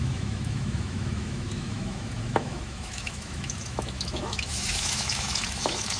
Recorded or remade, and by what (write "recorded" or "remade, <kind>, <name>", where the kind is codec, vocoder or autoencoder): remade, autoencoder, DAC-VAE